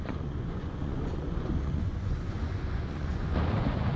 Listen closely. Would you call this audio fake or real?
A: fake